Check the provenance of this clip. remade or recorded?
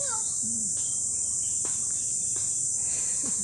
recorded